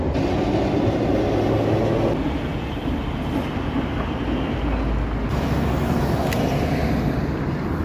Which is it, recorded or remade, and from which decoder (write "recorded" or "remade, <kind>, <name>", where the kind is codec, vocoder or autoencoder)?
recorded